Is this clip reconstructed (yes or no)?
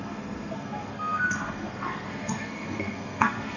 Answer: yes